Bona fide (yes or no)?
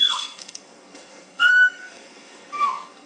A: no